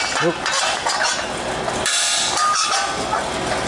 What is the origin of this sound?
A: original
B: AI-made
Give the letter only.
A